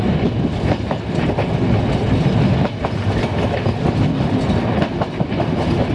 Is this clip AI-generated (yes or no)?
no